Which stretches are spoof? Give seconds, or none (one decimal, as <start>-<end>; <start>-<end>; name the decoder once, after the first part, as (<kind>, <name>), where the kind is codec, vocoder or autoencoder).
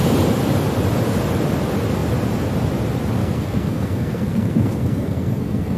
3.2-5.8 (codec, SNAC)